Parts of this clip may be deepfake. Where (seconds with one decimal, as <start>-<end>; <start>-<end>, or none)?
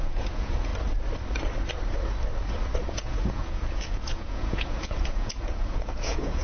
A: 0.0-0.7; 2.9-6.4